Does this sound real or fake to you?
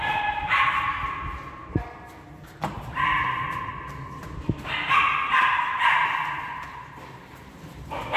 real